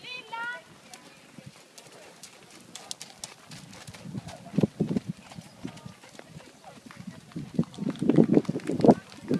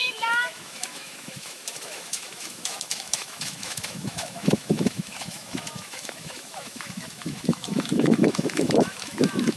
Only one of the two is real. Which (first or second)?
first